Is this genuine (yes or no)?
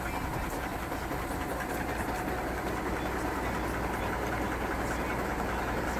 yes